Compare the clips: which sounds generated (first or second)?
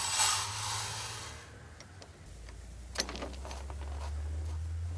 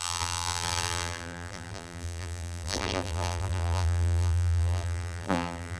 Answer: second